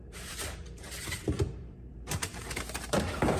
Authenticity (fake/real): fake